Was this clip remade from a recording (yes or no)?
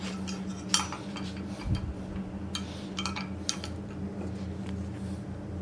no